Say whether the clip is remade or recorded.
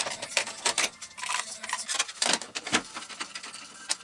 recorded